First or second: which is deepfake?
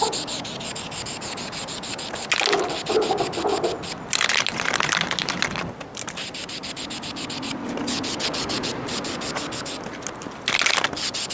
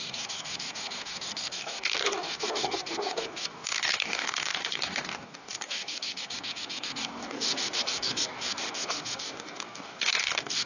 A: second